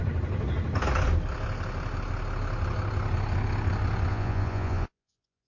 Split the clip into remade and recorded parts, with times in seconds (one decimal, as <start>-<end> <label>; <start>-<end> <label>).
0.0-4.1 recorded; 4.1-5.5 remade